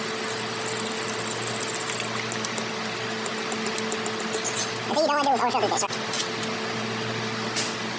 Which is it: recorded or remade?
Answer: recorded